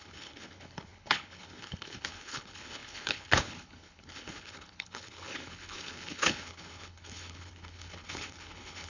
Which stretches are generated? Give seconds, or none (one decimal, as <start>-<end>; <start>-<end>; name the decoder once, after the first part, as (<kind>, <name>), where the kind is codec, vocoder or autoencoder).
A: 0.0-8.9 (codec, HILCodec)